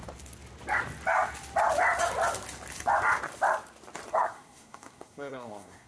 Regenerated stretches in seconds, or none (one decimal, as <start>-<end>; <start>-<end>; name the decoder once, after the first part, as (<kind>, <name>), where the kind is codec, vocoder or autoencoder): 4.1-5.9 (codec, SNAC)